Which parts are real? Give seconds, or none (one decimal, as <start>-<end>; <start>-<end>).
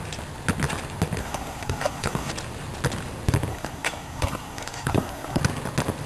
0.0-1.2; 2.3-3.5; 5.4-6.1